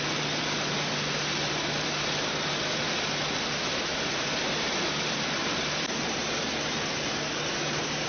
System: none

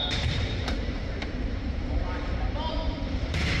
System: vocoder, BigVGAN v2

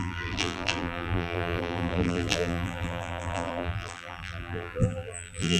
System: vocoder, BigVGAN v2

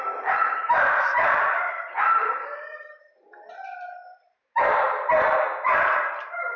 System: vocoder, BigVGAN v2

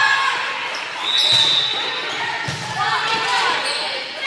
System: none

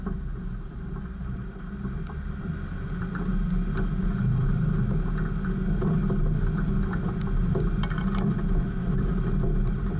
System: none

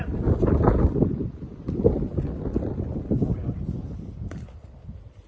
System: none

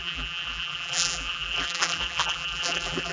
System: vocoder, BigVGAN v2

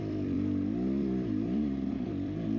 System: vocoder, BigVGAN v2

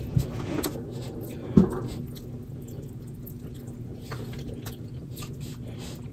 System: none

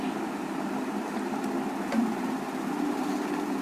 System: none